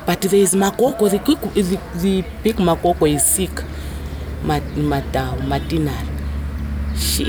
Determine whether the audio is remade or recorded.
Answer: recorded